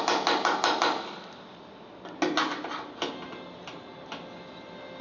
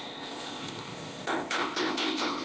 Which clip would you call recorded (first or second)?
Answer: first